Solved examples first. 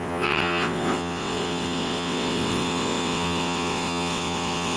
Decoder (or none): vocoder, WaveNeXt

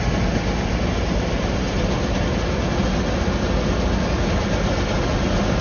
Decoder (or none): none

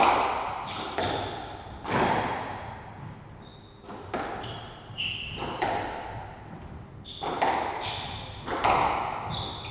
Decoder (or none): none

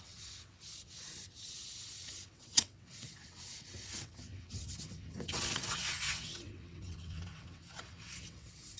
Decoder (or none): vocoder, WaveNeXt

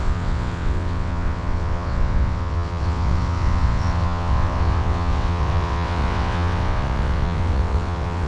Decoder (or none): vocoder, WaveNeXt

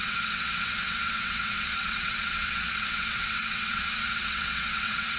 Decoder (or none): vocoder, WaveNeXt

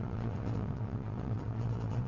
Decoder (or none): vocoder, WaveNeXt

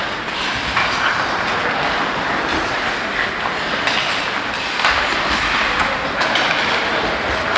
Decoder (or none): none